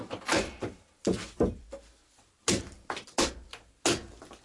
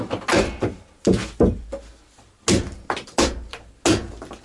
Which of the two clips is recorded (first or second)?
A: second